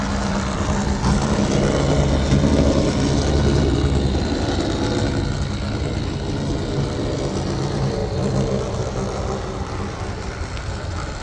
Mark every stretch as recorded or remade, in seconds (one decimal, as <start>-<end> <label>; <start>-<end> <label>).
0.0-11.2 recorded